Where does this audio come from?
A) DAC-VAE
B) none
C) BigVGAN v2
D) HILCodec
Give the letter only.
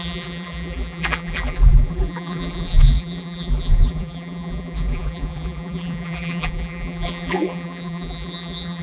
C